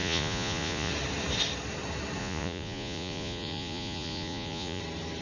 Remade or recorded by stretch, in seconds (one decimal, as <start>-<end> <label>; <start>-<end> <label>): 0.0-0.9 remade; 0.9-2.2 recorded; 2.2-4.8 remade; 4.8-5.2 recorded